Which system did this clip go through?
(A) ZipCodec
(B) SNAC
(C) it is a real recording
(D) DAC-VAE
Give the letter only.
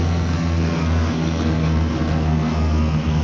B